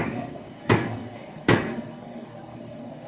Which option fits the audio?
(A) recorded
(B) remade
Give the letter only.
B